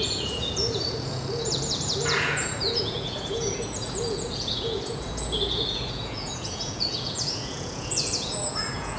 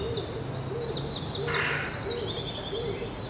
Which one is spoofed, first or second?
first